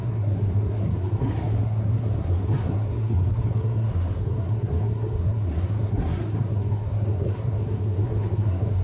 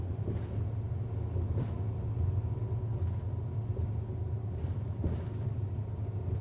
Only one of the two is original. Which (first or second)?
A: second